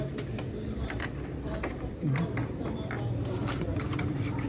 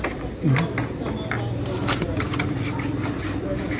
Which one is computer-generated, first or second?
first